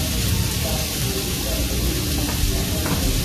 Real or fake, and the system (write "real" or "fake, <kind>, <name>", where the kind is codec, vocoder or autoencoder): real